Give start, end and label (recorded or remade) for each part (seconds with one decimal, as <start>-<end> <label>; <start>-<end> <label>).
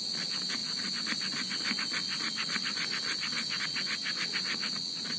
0.0-5.2 recorded